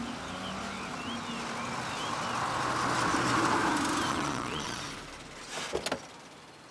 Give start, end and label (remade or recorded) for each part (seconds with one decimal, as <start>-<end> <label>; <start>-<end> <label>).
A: 0.0-4.1 recorded; 4.1-4.8 remade; 4.8-6.7 recorded